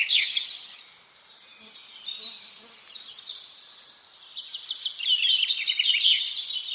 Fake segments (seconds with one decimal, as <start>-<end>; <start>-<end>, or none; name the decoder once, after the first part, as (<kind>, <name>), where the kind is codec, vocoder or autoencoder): 0.0-0.8 (vocoder, HiFi-GAN)